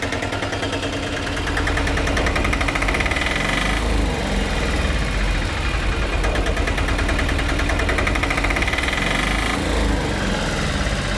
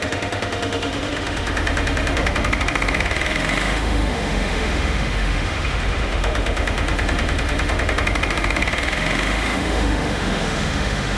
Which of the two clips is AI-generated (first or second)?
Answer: second